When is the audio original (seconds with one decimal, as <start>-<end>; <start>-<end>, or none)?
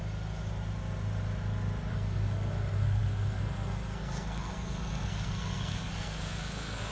0.0-1.9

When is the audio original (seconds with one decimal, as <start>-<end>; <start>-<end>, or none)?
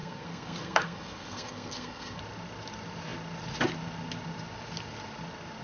2.2-5.6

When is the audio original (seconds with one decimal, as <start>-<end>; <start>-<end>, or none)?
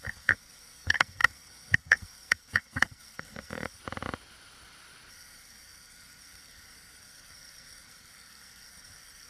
3.8-5.1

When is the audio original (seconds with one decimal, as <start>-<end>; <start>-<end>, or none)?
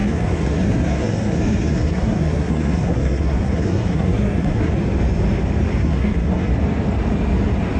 4.7-5.8; 6.5-7.8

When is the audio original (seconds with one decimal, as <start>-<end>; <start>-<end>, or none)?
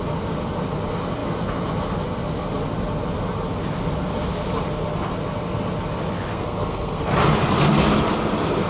0.0-6.3; 7.0-8.7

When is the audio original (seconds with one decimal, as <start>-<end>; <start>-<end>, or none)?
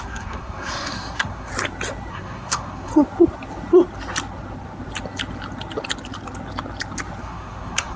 1.5-2.1; 2.9-7.2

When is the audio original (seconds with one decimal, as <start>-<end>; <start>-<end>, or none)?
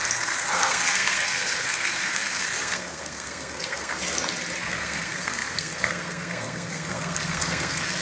3.9-4.6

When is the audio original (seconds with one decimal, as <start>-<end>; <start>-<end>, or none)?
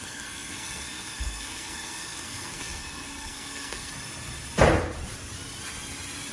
3.9-6.3